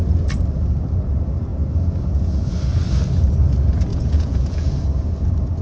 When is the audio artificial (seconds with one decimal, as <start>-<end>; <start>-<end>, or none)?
3.9-4.7